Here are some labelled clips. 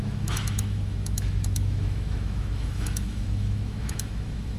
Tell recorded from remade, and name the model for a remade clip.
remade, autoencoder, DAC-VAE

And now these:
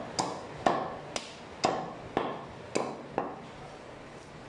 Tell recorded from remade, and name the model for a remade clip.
recorded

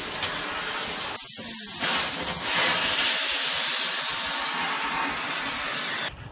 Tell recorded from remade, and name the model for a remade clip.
recorded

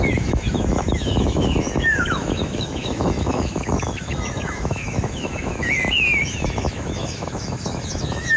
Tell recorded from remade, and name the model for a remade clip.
remade, autoencoder, DAC-VAE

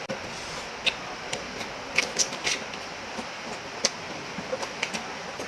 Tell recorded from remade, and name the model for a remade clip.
recorded